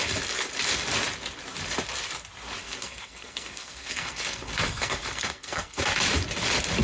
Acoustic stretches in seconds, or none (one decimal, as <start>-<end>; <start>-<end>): 0.0-2.6; 5.8-6.8